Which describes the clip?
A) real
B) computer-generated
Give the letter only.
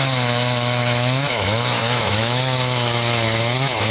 B